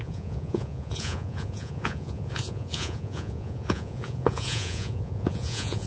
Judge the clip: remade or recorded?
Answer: remade